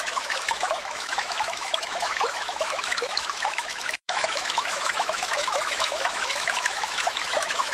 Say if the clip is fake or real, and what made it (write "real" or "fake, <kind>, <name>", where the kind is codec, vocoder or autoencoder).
fake, autoencoder, DAC-VAE